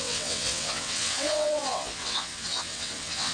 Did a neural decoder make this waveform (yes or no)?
yes